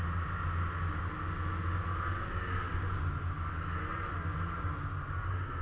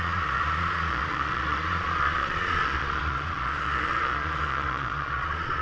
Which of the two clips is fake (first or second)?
second